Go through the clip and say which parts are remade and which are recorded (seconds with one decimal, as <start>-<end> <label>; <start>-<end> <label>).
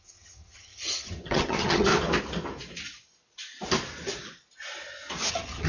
0.0-1.9 remade; 1.9-5.3 recorded; 5.3-5.7 remade